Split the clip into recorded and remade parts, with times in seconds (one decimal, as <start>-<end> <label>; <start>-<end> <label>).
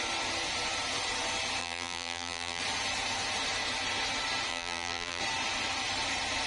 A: 0.0-1.6 recorded; 1.6-2.6 remade; 2.6-4.5 recorded; 4.5-5.2 remade; 5.2-6.5 recorded